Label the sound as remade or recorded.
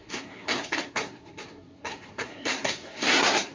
remade